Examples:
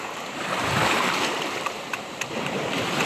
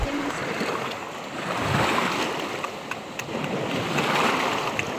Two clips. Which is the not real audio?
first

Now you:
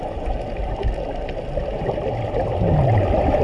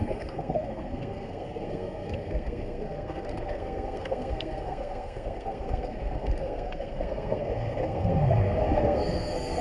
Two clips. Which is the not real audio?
second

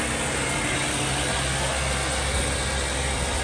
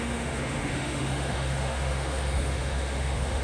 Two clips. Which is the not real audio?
second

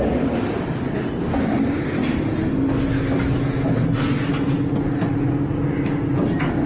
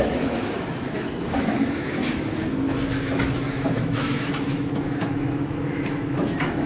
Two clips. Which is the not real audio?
second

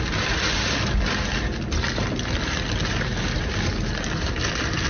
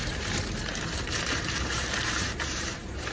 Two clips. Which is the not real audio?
second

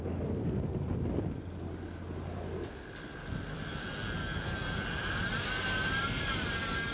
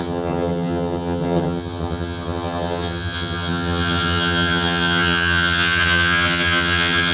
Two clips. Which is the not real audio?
second